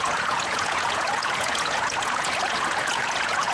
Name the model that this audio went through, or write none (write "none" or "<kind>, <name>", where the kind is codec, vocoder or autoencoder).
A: vocoder, Vocos